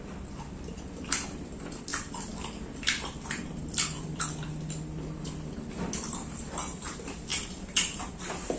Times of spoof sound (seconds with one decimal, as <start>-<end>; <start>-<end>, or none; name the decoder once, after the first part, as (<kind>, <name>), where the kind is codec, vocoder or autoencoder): 1.9-4.2 (vocoder, BigVGAN v2); 7.3-8.0